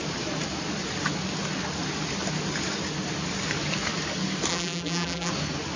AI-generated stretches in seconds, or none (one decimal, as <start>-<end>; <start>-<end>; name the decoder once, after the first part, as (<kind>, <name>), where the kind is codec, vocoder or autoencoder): 4.5-5.3 (vocoder, BigVGAN v2)